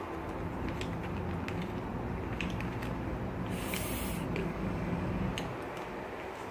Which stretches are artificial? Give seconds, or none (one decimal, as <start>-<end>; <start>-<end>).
4.4-5.1